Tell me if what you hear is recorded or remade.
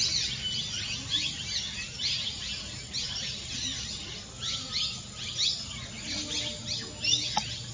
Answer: recorded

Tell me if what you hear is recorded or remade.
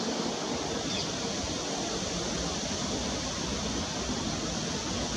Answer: recorded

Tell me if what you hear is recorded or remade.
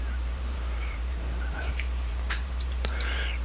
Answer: remade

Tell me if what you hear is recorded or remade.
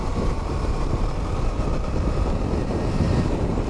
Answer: remade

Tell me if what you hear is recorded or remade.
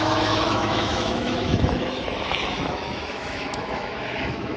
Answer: remade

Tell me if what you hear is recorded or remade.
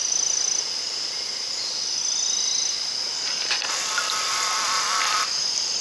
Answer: recorded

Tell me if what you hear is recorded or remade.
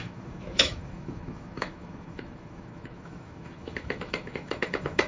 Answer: remade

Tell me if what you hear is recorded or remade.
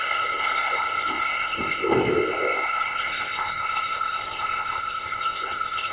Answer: remade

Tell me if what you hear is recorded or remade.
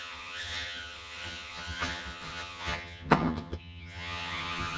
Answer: remade